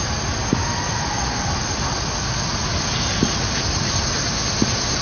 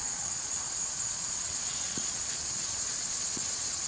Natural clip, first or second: first